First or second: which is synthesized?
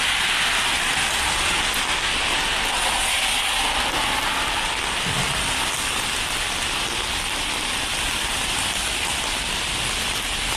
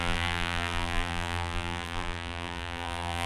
second